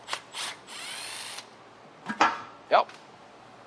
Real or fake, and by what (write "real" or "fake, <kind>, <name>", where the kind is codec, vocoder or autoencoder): real